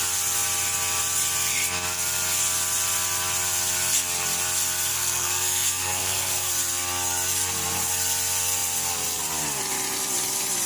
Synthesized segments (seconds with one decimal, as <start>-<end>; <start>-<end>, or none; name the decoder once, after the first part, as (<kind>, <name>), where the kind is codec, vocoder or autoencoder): 4.9-6.5 (codec, SNAC)